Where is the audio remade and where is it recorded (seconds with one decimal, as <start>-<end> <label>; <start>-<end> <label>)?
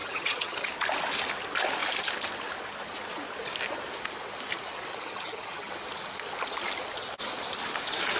0.0-0.7 remade; 0.7-4.9 recorded; 4.9-5.7 remade; 5.7-8.2 recorded